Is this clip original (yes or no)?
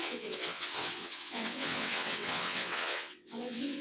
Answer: no